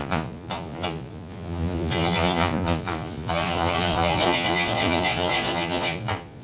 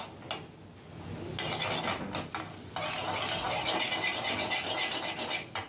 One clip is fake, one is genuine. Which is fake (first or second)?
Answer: first